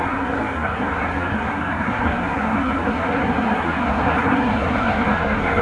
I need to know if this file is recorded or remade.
remade